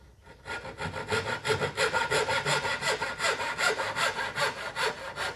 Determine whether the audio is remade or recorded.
recorded